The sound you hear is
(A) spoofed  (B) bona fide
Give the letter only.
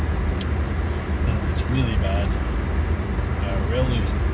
B